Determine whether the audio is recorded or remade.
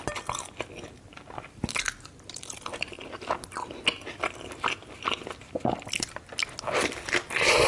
recorded